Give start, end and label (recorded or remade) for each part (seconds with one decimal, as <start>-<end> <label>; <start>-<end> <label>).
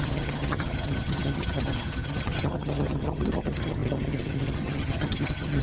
0.0-5.6 remade